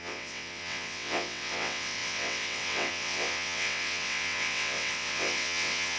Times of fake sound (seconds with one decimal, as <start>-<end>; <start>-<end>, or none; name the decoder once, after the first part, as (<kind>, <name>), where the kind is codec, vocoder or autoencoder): 0.0-6.0 (vocoder, WaveNeXt)